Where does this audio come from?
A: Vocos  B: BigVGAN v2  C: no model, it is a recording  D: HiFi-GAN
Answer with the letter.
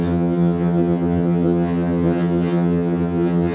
D